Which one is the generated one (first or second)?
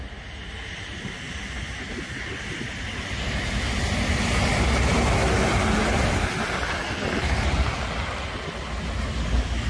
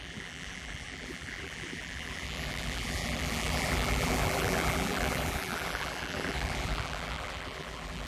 second